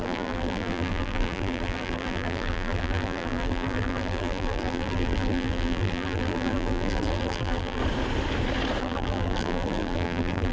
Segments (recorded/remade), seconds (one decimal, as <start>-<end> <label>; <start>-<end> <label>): 0.0-7.8 remade; 7.8-8.8 recorded; 8.8-10.5 remade